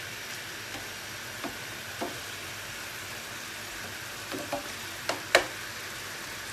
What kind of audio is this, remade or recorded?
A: remade